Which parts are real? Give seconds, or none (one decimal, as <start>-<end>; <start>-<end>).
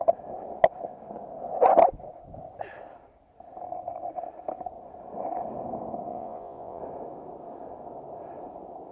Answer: 0.0-6.1; 6.8-8.9